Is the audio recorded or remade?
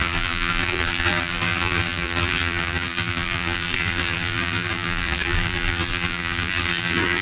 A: remade